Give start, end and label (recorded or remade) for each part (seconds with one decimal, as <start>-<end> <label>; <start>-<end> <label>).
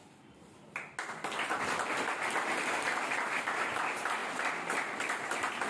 0.0-5.7 recorded